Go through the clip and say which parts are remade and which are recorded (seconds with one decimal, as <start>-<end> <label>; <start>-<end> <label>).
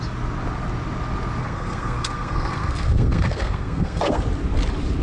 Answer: 0.0-1.4 recorded; 1.4-4.2 remade; 4.2-5.0 recorded